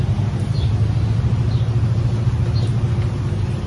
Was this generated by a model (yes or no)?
no